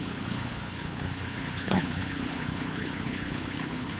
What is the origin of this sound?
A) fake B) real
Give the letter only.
A